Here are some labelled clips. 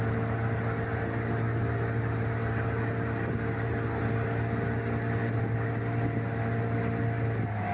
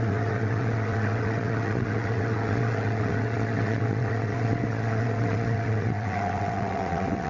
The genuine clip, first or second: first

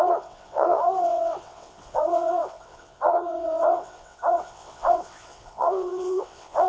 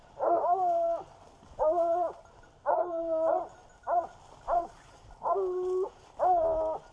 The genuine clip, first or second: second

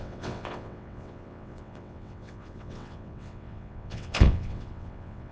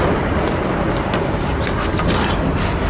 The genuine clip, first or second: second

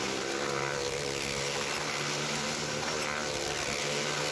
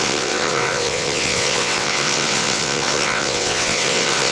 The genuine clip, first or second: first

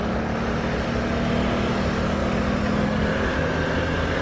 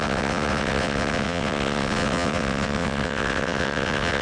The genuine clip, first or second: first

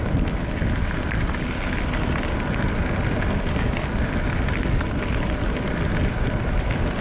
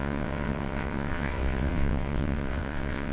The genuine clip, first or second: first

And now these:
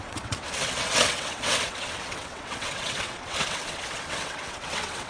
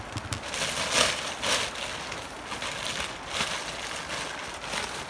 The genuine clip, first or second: second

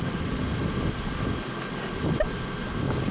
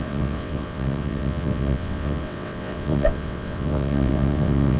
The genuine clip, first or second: first